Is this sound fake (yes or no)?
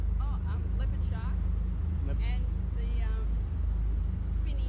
no